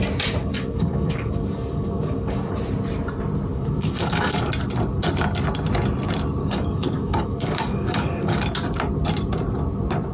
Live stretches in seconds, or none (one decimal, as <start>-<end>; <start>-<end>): 0.0-0.4; 2.5-3.5; 4.5-6.4; 8.4-10.1